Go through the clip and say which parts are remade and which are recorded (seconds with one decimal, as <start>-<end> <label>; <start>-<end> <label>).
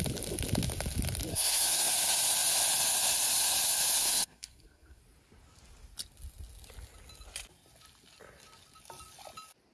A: 0.0-1.3 recorded; 1.3-1.9 remade; 1.9-4.0 recorded; 4.0-5.0 remade; 5.0-9.7 recorded